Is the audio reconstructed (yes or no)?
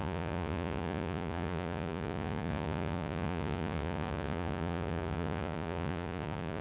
yes